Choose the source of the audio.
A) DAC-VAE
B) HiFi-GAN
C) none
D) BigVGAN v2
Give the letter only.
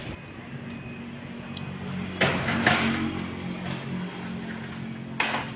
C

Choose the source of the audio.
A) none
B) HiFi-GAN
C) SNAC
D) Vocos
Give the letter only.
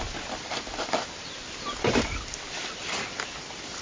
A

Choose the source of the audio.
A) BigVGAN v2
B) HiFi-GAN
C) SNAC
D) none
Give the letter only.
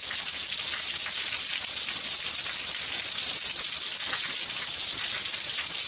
D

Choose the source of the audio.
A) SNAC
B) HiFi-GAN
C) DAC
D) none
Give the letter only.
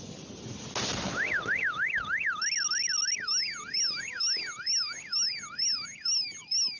D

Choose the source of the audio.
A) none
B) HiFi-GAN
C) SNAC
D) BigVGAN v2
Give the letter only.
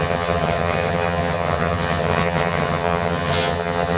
B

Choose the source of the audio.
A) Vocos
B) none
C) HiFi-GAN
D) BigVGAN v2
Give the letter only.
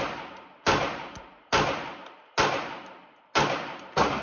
B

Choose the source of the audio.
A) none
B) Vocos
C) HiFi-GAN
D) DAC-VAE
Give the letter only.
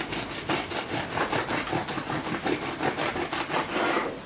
A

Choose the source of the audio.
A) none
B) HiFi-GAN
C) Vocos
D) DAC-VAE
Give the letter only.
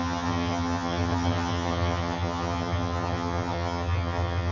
B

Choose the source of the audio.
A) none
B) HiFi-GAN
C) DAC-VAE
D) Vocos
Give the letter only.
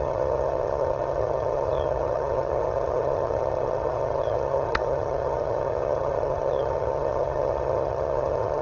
B